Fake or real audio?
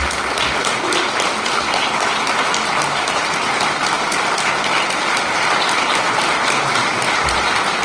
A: real